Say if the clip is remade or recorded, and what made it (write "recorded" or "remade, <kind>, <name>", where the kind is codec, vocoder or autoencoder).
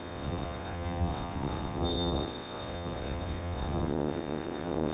remade, vocoder, WaveNeXt